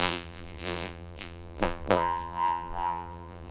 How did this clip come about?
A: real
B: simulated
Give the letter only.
B